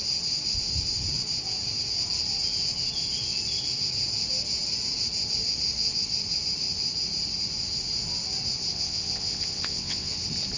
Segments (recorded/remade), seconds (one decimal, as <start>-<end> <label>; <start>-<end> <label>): 0.0-8.7 recorded; 8.7-10.1 remade; 10.1-10.6 recorded